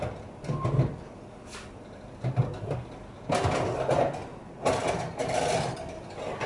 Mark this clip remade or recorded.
recorded